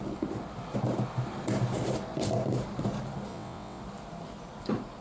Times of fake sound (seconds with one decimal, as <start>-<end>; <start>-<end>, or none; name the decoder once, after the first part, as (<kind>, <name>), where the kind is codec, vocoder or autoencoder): 3.3-3.8 (vocoder, WaveNeXt)